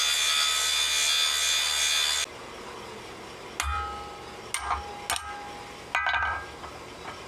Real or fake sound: real